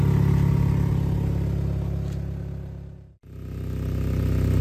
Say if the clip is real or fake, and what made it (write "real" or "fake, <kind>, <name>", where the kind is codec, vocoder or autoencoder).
real